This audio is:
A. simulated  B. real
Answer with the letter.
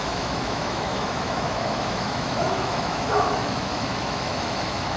A